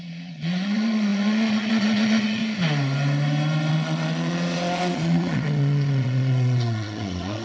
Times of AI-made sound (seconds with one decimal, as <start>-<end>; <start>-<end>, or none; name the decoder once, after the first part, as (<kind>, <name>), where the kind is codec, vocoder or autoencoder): 0.0-2.4 (vocoder, Vocos); 3.7-7.4